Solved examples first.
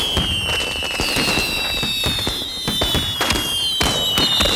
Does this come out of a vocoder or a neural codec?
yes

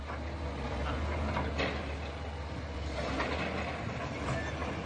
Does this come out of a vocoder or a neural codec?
no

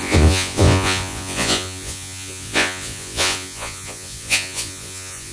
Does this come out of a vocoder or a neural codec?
yes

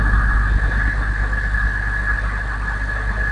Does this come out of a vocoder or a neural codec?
no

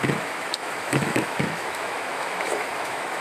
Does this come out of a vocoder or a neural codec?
yes